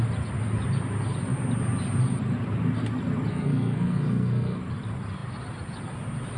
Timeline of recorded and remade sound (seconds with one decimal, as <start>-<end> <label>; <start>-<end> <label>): 0.0-3.3 recorded; 3.3-4.6 remade; 4.6-6.4 recorded